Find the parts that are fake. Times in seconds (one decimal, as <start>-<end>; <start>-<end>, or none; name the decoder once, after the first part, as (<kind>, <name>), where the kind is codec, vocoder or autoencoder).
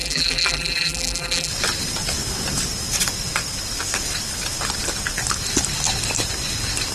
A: 0.0-1.5 (vocoder, BigVGAN v2)